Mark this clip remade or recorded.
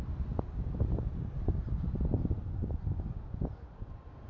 recorded